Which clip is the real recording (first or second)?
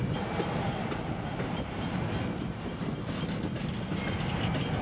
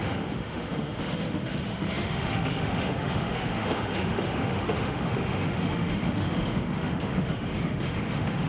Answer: first